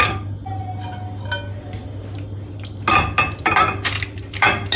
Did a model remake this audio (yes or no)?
no